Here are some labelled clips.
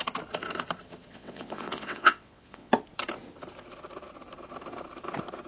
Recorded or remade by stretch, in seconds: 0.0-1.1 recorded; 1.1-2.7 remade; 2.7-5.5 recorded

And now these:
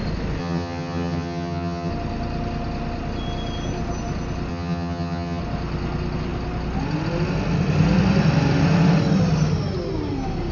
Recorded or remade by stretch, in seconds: 0.0-0.4 recorded; 0.4-1.9 remade; 1.9-4.5 recorded; 4.5-5.4 remade; 5.4-10.5 recorded

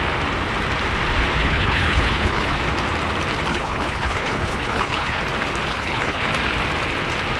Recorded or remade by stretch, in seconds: 0.0-1.4 recorded; 1.4-2.6 remade; 2.6-3.5 recorded; 3.5-5.2 remade; 5.2-5.7 recorded; 5.7-6.3 remade; 6.3-7.4 recorded